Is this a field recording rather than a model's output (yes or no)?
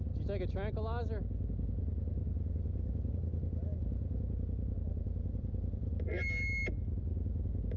yes